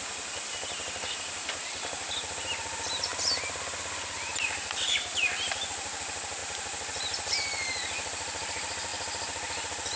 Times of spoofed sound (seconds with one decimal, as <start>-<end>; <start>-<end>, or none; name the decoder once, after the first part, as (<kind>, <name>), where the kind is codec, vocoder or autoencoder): none